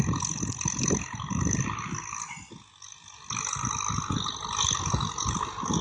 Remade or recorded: recorded